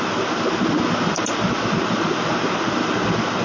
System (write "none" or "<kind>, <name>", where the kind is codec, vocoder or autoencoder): none